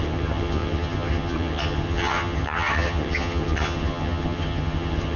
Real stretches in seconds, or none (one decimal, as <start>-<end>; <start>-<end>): none